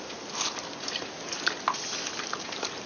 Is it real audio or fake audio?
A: real